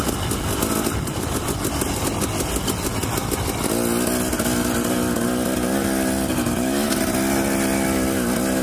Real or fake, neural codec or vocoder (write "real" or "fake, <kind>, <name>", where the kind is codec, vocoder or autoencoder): real